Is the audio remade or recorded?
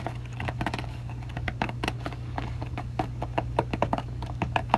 remade